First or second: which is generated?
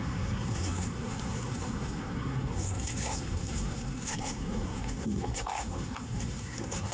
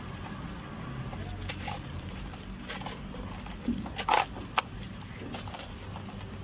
first